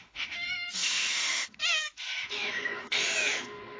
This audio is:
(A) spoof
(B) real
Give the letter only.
A